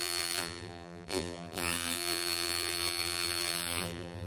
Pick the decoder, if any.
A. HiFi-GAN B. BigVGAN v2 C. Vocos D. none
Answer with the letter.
B